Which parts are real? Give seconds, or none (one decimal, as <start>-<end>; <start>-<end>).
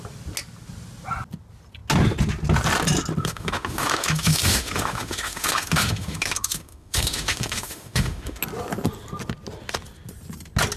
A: 0.0-3.2; 8.4-10.8